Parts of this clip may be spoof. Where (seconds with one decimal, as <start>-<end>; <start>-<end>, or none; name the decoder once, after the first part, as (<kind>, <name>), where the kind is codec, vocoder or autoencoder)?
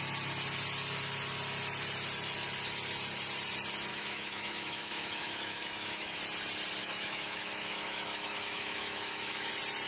3.9-6.2 (autoencoder, DAC-VAE); 6.8-9.5